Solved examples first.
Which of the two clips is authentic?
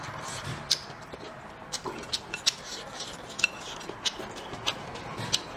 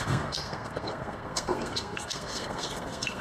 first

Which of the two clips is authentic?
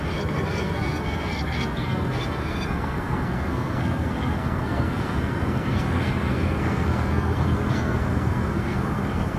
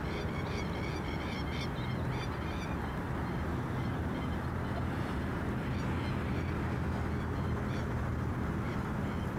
second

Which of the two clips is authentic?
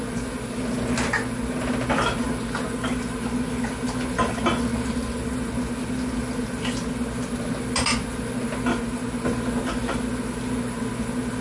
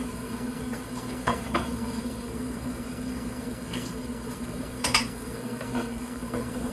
first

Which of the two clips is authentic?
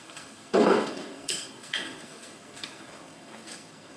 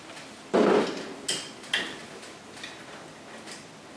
second